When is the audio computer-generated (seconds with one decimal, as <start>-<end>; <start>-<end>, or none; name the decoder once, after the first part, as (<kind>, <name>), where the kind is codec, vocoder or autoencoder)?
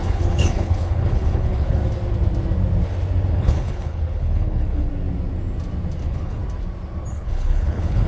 0.0-1.8 (codec, HILCodec); 3.3-4.9; 6.0-6.4; 7.1-8.1